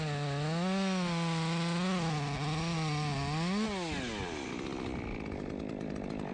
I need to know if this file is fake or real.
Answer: real